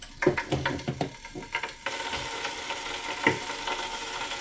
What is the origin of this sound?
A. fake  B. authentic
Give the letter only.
B